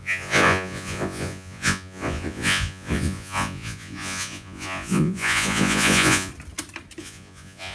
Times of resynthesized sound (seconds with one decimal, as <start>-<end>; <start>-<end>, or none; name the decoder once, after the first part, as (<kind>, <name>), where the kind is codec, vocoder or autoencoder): 0.0-6.3 (vocoder, Vocos); 7.0-7.7